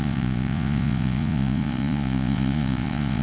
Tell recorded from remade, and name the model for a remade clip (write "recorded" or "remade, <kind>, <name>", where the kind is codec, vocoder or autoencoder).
remade, vocoder, Vocos